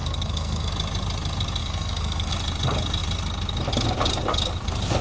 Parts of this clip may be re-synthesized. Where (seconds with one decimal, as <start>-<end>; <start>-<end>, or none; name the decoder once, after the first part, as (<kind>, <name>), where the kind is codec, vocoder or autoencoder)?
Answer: 0.0-0.7 (codec, SNAC); 1.6-2.3